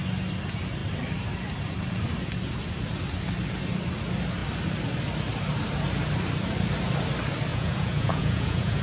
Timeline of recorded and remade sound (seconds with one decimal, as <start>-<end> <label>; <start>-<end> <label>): 0.0-7.5 recorded; 7.5-8.8 remade

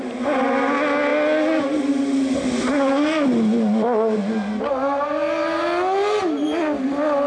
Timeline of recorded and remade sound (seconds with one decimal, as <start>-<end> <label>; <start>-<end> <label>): 0.0-7.3 recorded

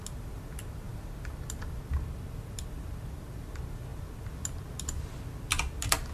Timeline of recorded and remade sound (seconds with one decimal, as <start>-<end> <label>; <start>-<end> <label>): 0.0-6.1 recorded

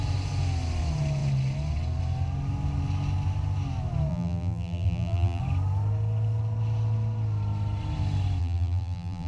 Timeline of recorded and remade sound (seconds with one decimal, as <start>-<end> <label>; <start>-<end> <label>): 0.0-4.1 recorded; 4.1-5.4 remade; 5.4-8.4 recorded; 8.4-9.3 remade

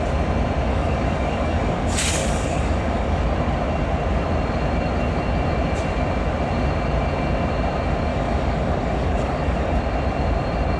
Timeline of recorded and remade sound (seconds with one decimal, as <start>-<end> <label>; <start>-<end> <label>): 0.0-0.7 recorded; 0.7-3.2 remade; 3.2-8.1 recorded; 8.1-9.8 remade; 9.8-10.8 recorded

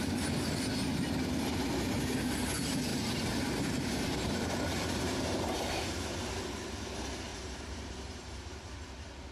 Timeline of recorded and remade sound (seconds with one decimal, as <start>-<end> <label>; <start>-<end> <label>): 0.0-2.9 recorded; 2.9-5.9 remade; 5.9-7.3 recorded; 7.3-8.7 remade; 8.7-9.3 recorded

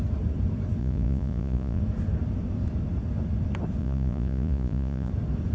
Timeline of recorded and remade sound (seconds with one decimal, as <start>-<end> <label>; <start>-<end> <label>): 0.0-0.8 recorded; 0.8-1.8 remade; 1.8-3.8 recorded; 3.8-5.1 remade; 5.1-5.5 recorded

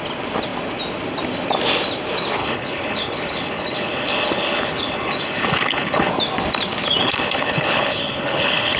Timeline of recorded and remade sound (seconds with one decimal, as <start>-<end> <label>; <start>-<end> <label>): 0.0-2.4 recorded; 2.4-6.1 remade; 6.1-7.0 recorded; 7.0-8.8 remade